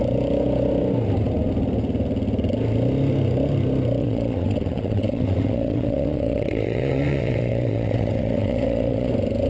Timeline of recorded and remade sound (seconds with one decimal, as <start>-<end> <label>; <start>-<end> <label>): 0.0-4.0 recorded; 4.0-9.1 remade; 9.1-9.5 recorded